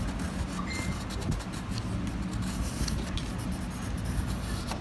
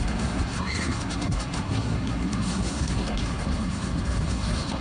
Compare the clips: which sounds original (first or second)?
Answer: first